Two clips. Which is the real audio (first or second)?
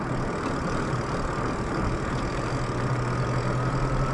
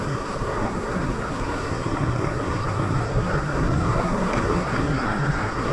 first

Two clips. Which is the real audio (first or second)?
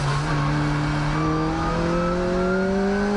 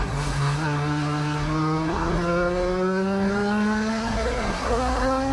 first